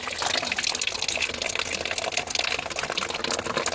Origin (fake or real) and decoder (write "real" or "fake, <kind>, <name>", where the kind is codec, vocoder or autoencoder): real